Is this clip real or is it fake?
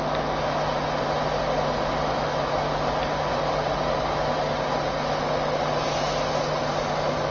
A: real